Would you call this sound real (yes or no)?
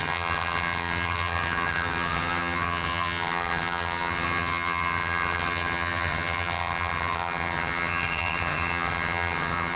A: no